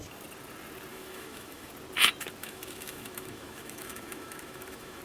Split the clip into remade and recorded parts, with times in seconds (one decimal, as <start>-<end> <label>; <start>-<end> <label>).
0.0-0.9 recorded; 0.9-1.7 remade; 1.7-2.4 recorded; 2.4-5.0 remade

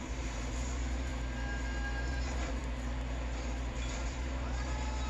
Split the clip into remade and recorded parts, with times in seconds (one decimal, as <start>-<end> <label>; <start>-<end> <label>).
0.0-1.1 remade; 1.1-2.1 recorded; 2.1-2.6 remade; 2.6-3.7 recorded; 3.7-5.1 remade

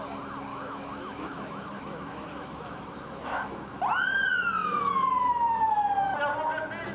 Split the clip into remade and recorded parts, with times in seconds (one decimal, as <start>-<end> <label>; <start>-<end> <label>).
0.0-0.5 recorded; 0.5-3.8 remade; 3.8-4.6 recorded; 4.6-5.7 remade; 5.7-6.9 recorded

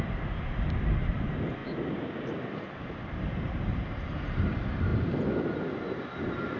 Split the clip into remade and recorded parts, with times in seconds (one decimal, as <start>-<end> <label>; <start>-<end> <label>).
0.0-1.6 recorded; 1.6-4.5 remade; 4.5-6.6 recorded

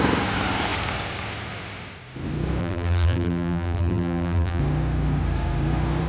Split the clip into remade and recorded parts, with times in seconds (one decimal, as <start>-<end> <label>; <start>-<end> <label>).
0.0-2.6 recorded; 2.6-4.6 remade; 4.6-6.1 recorded

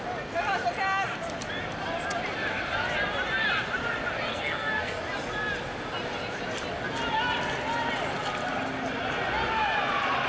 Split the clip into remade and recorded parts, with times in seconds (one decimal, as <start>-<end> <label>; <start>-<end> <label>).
0.0-4.3 recorded; 4.3-5.0 remade; 5.0-10.3 recorded

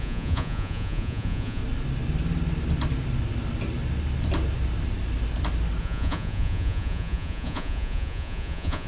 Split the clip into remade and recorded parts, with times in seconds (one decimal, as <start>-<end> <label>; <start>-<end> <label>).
0.0-1.6 remade; 1.6-5.8 recorded; 5.8-8.9 remade